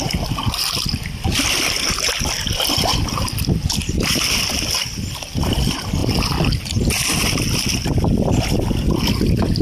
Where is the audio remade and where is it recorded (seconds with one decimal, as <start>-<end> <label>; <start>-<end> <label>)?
0.0-9.6 recorded